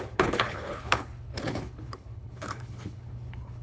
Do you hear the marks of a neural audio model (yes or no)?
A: yes